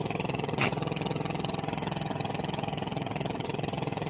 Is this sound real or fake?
fake